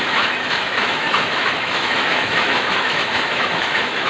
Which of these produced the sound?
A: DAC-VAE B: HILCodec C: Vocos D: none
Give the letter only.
A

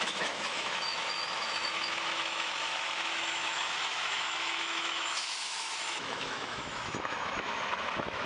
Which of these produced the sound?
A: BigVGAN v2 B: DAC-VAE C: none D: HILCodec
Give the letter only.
B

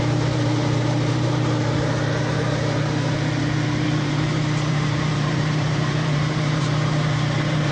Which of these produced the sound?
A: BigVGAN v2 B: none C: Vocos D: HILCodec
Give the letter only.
A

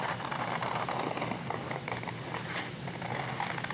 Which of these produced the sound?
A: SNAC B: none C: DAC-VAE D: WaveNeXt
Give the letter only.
B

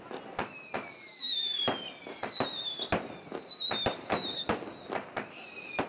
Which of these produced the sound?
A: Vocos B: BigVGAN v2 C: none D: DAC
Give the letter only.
C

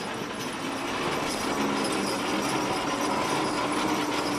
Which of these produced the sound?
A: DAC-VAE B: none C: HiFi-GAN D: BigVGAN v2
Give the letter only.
B